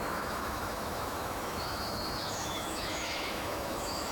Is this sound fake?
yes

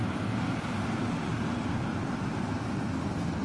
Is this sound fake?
no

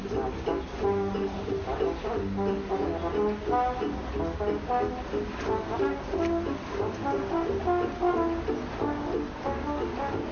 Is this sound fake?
no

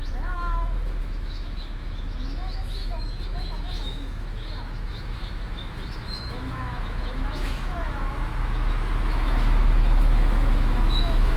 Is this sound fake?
yes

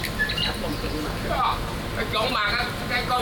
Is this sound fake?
no